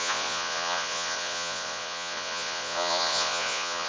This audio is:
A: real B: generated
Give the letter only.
B